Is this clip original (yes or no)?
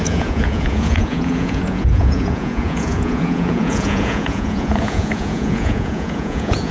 no